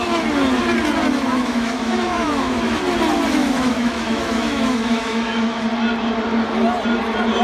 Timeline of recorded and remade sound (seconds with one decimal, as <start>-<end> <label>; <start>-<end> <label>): 0.0-1.3 recorded; 1.3-2.8 remade; 2.8-3.4 recorded; 3.4-5.6 remade; 5.6-7.4 recorded